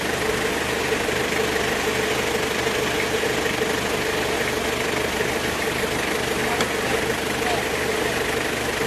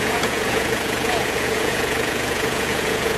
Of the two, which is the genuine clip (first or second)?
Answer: first